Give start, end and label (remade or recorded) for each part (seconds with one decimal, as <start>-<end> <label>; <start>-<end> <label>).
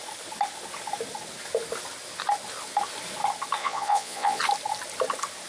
0.0-3.6 recorded; 3.6-4.4 remade; 4.4-5.5 recorded